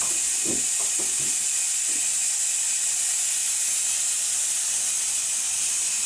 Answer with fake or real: real